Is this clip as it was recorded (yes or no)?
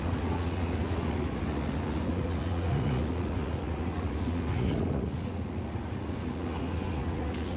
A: no